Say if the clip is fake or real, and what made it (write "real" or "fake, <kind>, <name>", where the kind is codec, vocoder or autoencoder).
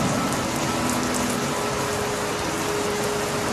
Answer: real